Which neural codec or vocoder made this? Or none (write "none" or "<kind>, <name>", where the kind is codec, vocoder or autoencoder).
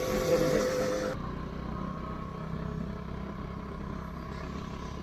none